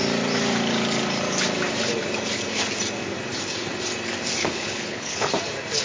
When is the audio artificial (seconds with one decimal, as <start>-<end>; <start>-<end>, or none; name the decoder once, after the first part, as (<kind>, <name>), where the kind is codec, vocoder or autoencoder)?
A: 4.4-5.3 (codec, HILCodec)